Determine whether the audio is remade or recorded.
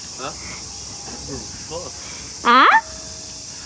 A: recorded